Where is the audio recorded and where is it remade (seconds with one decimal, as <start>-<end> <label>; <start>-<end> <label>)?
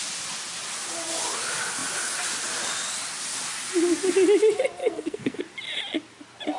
0.0-4.8 recorded; 4.8-5.4 remade; 5.4-6.6 recorded